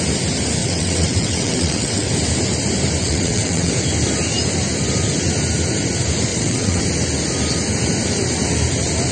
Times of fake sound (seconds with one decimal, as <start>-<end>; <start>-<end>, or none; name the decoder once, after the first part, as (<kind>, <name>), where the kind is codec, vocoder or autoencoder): 0.6-2.1 (vocoder, WaveNeXt); 3.0-3.7; 6.3-6.8